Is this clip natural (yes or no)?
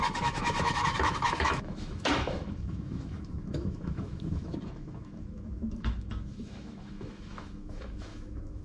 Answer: no